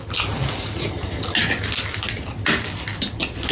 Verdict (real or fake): real